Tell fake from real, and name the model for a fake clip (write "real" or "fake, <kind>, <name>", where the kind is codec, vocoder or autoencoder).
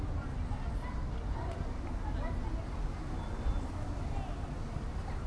real